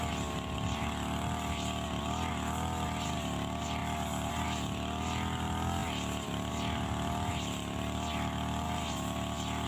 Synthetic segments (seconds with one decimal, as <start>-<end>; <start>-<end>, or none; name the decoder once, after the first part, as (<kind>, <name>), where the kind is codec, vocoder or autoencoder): none